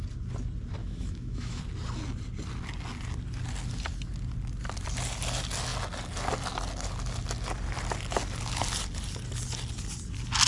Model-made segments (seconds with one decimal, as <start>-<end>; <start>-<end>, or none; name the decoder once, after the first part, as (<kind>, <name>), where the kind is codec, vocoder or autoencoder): 0.8-1.6 (autoencoder, DAC-VAE)